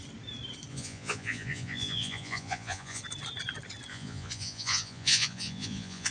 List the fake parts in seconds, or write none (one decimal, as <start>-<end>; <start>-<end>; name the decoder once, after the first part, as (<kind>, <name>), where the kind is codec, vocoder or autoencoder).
0.7-3.0 (vocoder, Vocos); 3.9-6.1